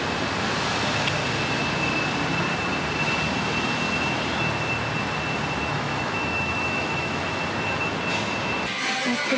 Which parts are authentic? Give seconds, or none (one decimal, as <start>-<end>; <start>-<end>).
0.0-5.6; 7.4-9.4